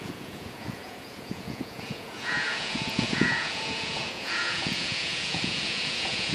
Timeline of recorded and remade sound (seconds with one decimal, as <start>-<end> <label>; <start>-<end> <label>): 0.0-6.3 remade